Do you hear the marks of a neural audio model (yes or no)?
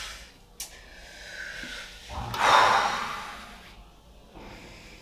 no